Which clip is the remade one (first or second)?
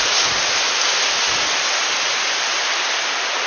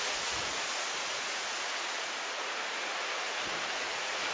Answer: second